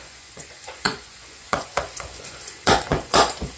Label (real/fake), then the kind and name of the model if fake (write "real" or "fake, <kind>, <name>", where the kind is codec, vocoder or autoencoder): fake, vocoder, Vocos